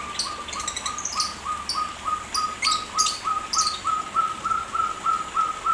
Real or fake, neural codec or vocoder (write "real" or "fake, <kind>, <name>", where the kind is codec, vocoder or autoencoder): real